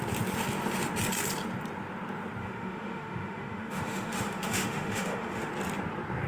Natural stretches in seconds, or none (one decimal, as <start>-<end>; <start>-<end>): 0.0-2.4; 5.5-6.3